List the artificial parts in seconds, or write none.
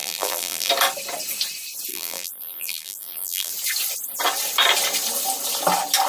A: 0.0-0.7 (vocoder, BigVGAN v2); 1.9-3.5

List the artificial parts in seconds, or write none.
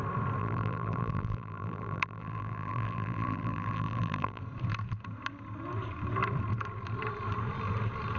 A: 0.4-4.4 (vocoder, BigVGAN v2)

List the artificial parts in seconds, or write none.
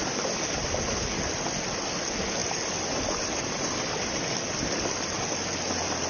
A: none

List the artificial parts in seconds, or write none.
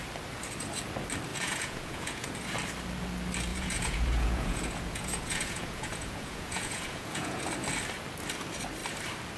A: 1.3-2.3 (vocoder, Vocos); 3.5-7.4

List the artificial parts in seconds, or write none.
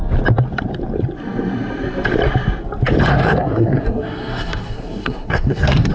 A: 3.1-5.9 (codec, SNAC)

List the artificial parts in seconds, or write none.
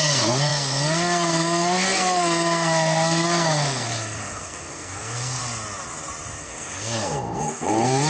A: 0.0-5.4 (codec, SNAC); 6.4-8.1